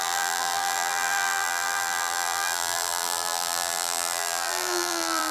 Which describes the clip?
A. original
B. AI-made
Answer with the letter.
B